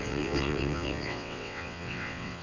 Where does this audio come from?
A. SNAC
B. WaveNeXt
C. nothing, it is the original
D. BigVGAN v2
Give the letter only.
B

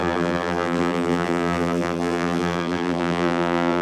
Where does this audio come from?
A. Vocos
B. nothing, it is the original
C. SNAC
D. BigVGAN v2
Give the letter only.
D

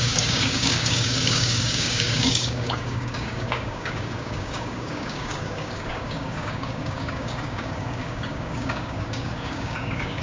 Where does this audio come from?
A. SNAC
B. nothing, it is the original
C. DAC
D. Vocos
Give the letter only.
C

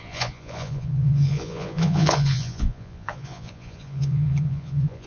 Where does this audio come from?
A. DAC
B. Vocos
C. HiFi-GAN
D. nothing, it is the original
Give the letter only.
B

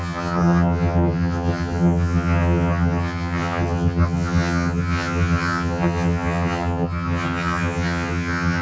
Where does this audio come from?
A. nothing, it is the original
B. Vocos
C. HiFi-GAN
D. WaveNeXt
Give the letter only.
C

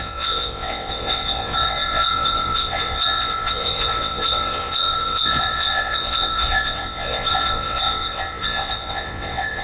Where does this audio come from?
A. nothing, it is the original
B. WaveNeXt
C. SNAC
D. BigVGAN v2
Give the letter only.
B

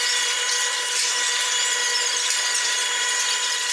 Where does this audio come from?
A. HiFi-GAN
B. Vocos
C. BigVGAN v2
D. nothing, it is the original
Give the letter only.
C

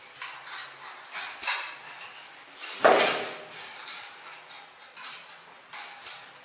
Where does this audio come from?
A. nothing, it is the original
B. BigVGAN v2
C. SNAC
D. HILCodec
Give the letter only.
A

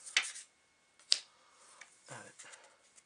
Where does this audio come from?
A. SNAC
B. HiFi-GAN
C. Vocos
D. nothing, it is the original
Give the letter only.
D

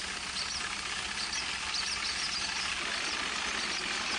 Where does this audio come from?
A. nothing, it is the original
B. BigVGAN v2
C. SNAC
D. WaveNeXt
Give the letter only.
A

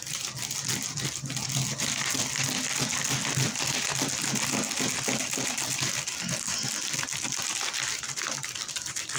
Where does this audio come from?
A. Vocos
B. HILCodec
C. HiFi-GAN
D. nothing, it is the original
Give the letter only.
D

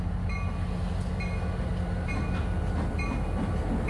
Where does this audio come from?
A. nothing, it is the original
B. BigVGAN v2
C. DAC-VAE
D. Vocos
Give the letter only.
A